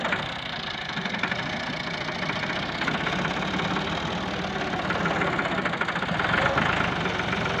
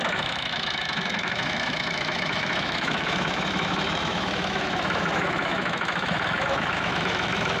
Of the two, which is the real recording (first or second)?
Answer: first